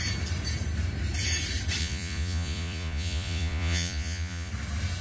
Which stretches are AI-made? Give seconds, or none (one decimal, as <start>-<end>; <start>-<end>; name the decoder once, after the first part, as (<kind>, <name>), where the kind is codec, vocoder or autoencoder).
1.8-4.5 (vocoder, Vocos)